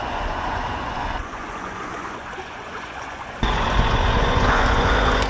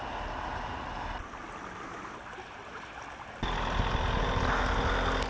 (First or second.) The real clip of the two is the second